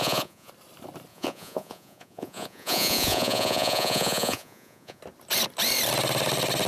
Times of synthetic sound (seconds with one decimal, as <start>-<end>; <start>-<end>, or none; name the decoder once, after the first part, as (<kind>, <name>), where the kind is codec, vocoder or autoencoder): 0.0-0.5 (vocoder, Vocos); 1.1-5.0